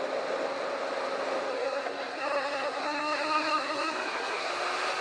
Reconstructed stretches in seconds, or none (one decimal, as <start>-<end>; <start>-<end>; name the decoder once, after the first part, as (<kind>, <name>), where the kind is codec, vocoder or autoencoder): 1.5-4.5 (codec, SNAC)